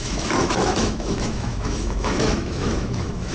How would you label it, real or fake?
fake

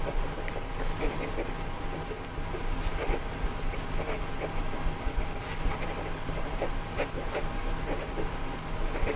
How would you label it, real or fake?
real